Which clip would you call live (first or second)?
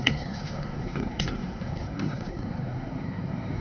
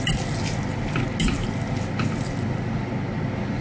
second